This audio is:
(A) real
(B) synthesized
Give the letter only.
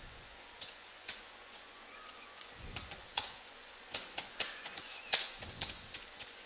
B